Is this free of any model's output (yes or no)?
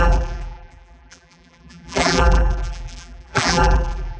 no